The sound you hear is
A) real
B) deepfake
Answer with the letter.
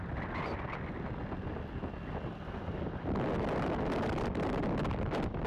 A